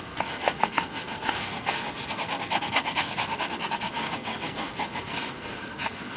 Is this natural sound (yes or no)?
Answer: no